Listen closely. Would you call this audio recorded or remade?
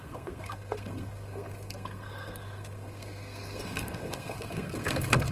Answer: remade